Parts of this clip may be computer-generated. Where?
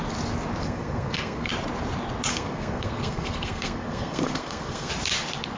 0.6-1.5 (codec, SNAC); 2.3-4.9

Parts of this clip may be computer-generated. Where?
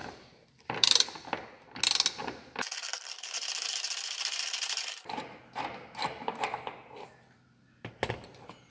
0.0-1.8 (vocoder, BigVGAN v2); 2.8-5.2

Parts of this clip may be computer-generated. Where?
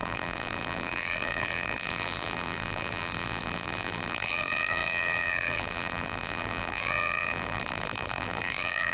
0.0-8.9 (vocoder, BigVGAN v2)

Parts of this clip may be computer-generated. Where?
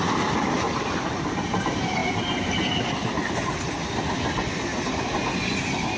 none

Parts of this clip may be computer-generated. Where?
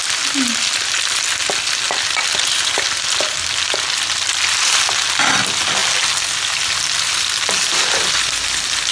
none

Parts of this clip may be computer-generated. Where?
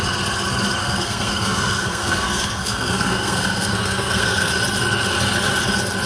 0.8-4.5 (codec, SNAC)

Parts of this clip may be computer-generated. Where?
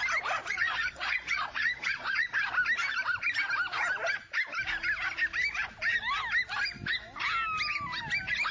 0.4-2.3 (vocoder, Vocos)